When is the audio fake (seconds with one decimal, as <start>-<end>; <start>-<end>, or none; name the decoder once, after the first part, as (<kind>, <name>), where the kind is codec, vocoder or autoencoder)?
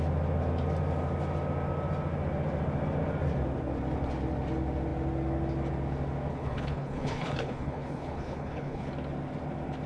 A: 6.3-8.9 (codec, HILCodec)